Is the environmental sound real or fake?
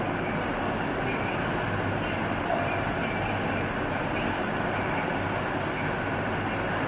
real